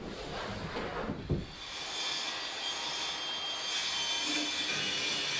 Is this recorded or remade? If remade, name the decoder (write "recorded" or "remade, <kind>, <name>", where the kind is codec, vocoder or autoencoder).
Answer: recorded